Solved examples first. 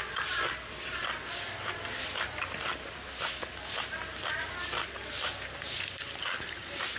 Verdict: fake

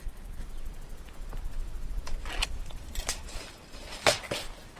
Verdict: fake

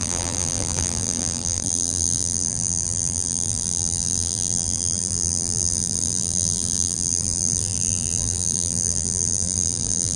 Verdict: fake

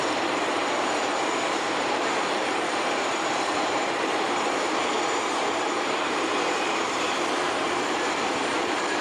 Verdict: fake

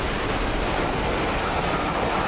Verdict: real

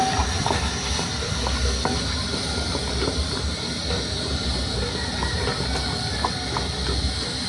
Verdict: real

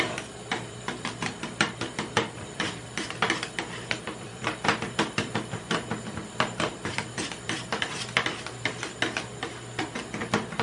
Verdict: fake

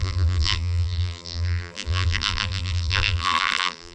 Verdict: fake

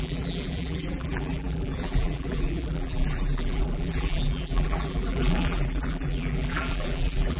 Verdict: fake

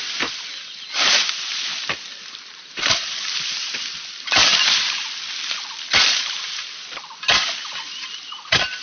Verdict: fake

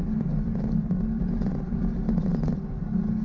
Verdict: real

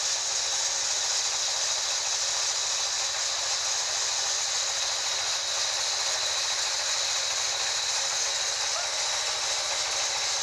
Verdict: real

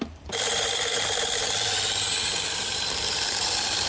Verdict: fake